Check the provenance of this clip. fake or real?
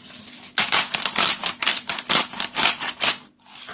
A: real